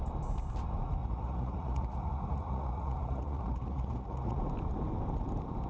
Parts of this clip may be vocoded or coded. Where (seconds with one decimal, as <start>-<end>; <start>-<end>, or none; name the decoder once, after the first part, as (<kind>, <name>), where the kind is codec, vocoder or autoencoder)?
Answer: 1.0-4.4 (vocoder, Vocos)